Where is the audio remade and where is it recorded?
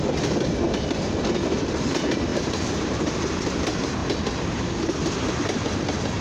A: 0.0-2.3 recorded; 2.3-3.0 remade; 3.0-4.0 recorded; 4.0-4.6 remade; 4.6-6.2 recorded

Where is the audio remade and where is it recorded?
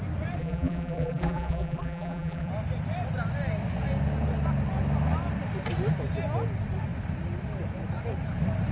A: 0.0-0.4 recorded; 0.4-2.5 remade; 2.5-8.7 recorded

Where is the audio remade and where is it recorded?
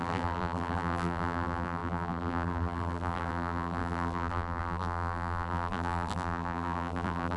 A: 0.0-7.4 remade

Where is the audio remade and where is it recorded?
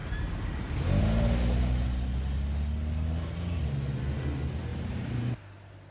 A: 0.0-4.7 recorded; 4.7-5.2 remade; 5.2-5.9 recorded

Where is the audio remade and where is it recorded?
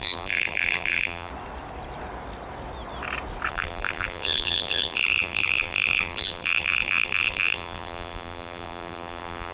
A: 0.0-1.3 remade; 1.3-3.5 recorded; 3.5-9.5 remade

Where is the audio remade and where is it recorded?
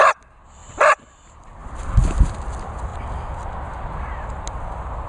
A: 0.0-0.6 recorded; 0.6-1.1 remade; 1.1-1.6 recorded; 1.6-2.2 remade; 2.2-5.1 recorded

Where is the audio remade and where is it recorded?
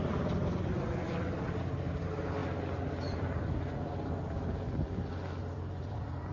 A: 0.0-5.4 recorded; 5.4-6.3 remade